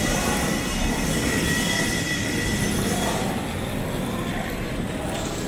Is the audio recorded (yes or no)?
no